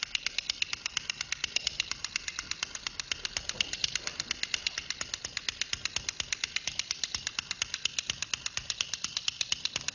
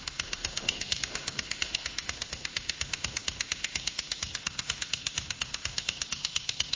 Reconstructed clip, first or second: second